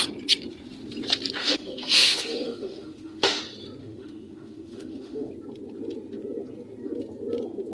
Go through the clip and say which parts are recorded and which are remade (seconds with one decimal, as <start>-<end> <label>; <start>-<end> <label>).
0.0-1.4 recorded; 1.4-3.4 remade; 3.4-3.8 recorded; 3.8-5.3 remade; 5.3-7.7 recorded